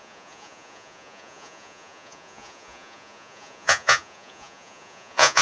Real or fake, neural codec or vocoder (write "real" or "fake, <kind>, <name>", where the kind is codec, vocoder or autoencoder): fake, vocoder, Vocos